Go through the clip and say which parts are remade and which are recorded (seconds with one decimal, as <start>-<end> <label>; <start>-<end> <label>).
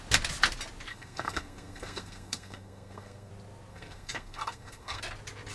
0.0-0.9 recorded; 0.9-3.3 remade; 3.3-3.7 recorded; 3.7-5.0 remade; 5.0-5.5 recorded